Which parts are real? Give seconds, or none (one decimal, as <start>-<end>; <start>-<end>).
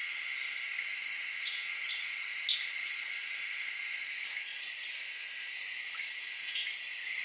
0.0-2.5; 3.2-4.5; 5.1-7.2